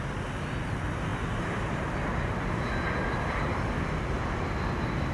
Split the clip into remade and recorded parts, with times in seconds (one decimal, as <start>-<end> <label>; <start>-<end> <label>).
0.0-5.1 recorded